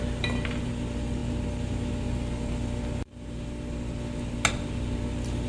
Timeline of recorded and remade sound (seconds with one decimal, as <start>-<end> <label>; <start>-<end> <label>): 0.0-5.5 recorded